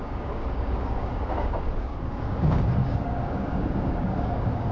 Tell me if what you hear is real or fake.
fake